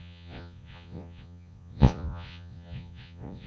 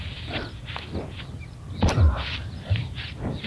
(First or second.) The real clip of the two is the second